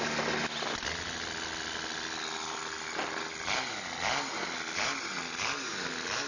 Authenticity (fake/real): real